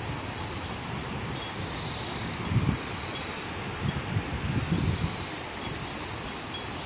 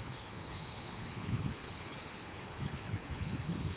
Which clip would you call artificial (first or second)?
second